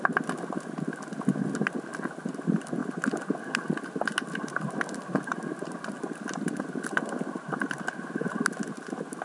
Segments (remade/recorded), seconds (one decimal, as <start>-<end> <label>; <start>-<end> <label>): 0.0-9.2 recorded